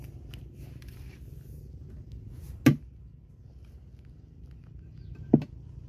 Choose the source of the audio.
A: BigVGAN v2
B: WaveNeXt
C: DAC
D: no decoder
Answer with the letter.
D